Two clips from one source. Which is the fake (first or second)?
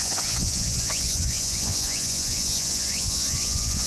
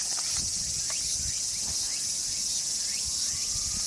first